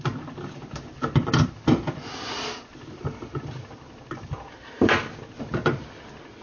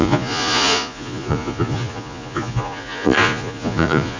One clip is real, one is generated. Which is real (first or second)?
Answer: first